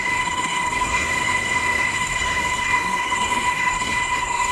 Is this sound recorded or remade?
remade